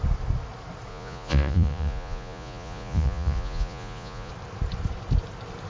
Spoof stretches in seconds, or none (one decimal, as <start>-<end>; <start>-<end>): 0.9-4.3